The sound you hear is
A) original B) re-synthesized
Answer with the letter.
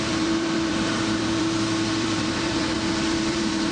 B